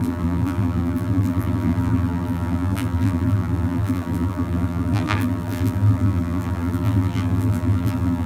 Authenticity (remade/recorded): remade